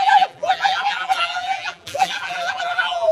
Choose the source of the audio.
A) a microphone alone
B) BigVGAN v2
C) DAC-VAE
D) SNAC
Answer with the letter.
B